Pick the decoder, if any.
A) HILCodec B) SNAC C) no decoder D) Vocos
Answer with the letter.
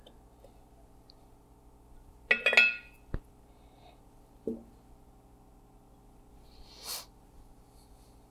C